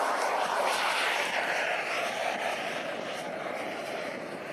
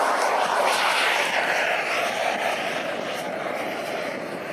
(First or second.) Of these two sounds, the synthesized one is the first